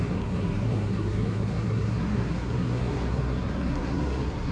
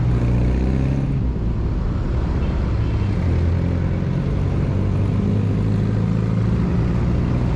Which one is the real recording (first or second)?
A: second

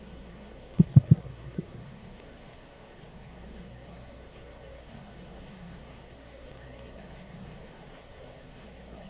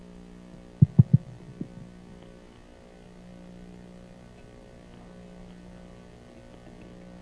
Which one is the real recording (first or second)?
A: second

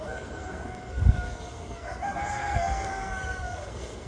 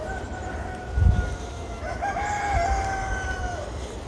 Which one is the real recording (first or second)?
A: second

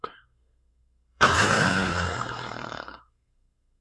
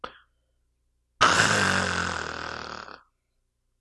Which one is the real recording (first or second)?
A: second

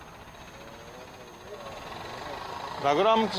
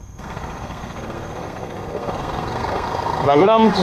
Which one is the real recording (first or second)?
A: first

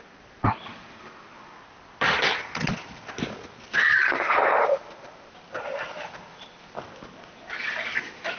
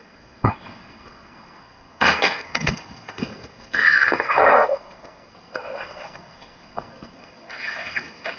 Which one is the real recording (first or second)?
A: first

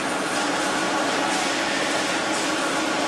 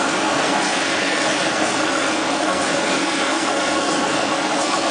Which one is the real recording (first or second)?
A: first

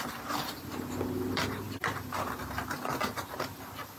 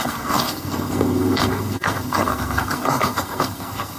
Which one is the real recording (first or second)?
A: first